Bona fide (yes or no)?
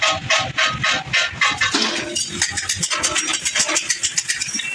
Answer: yes